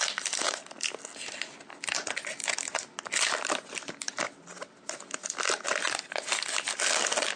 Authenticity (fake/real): real